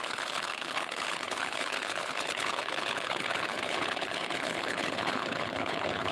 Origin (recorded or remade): remade